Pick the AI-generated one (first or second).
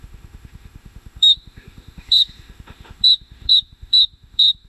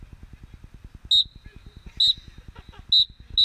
first